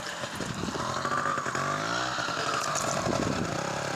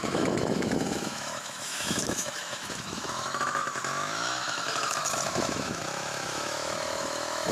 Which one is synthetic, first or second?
second